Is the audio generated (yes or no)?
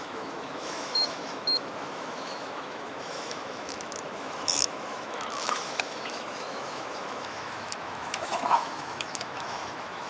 yes